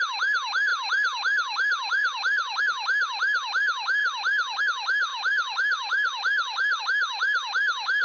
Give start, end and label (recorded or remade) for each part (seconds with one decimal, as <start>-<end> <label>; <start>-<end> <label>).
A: 0.0-0.7 recorded; 0.7-2.6 remade; 2.6-5.1 recorded; 5.1-6.8 remade; 6.8-8.0 recorded